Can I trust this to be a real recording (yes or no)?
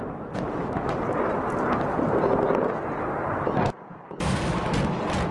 yes